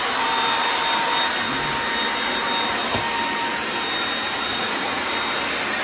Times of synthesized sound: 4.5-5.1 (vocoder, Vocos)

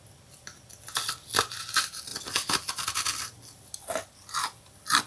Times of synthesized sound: none

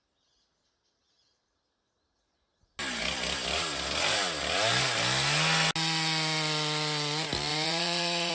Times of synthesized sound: 7.5-8.3 (vocoder, Vocos)

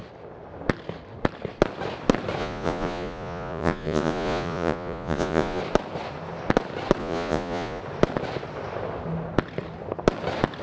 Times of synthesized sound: 2.4-5.6 (vocoder, Vocos); 7.0-7.8

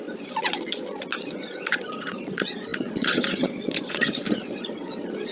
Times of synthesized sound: 0.0-5.3 (vocoder, Vocos)

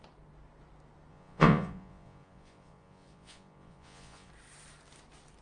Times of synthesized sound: 1.1-4.3 (vocoder, Vocos)